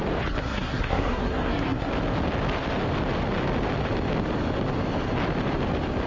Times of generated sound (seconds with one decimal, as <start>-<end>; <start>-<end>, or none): 0.4-1.9